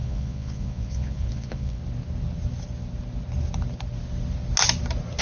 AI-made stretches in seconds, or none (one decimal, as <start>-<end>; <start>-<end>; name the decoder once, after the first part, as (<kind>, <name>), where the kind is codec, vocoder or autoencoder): 0.0-1.8 (vocoder, Vocos)